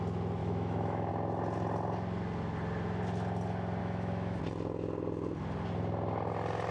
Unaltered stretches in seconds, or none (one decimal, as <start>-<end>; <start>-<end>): 0.0-0.4; 1.1-3.8; 4.4-6.7

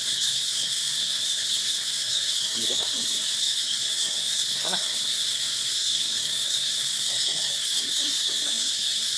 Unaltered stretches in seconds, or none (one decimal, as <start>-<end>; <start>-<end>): none

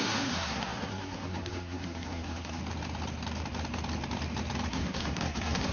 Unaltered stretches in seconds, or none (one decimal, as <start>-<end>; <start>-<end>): 2.6-4.7

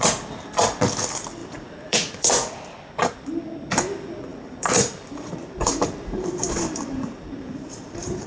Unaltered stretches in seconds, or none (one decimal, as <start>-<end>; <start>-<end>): 0.0-1.4; 2.3-4.3

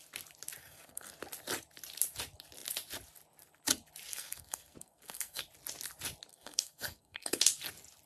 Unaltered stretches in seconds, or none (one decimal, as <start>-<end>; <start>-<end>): 0.0-0.6; 1.2-4.1; 5.4-6.3; 7.4-8.1